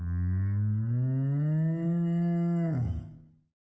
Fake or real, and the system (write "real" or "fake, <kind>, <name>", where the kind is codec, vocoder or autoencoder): real